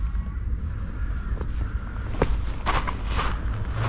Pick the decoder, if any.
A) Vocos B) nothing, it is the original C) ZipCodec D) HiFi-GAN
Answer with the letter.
B